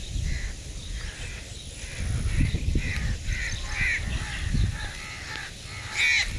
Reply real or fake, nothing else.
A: real